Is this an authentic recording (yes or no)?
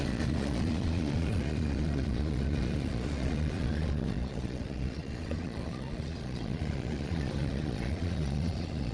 no